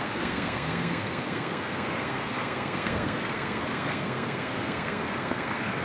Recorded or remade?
remade